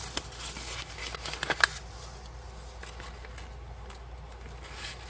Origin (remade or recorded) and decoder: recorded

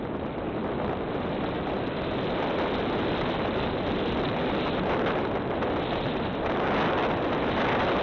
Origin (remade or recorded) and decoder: recorded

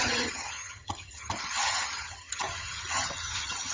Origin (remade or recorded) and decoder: remade, vocoder, HiFi-GAN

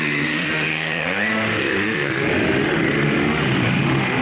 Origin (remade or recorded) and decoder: remade, autoencoder, DAC-VAE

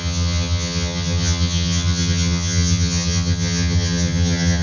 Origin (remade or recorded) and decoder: remade, vocoder, HiFi-GAN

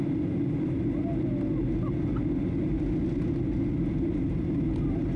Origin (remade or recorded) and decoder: recorded